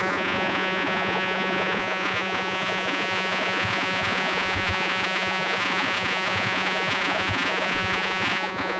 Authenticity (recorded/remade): remade